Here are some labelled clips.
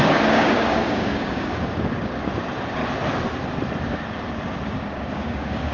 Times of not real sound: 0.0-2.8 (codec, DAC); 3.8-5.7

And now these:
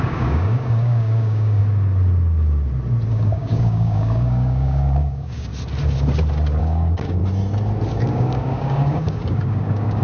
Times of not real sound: 0.0-1.6 (codec, DAC); 3.1-5.5; 6.6-7.2; 7.9-10.0

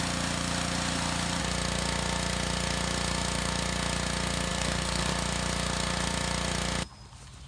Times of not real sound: 4.5-5.1 (codec, DAC)

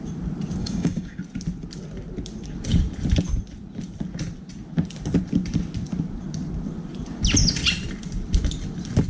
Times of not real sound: 0.6-1.2 (codec, DAC)

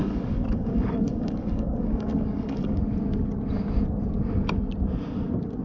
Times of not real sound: 0.0-2.8 (codec, DAC)

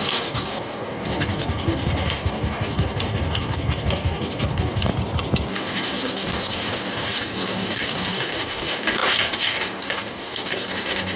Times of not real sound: 0.0-4.9 (codec, DAC); 5.5-11.2